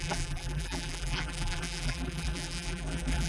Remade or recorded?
remade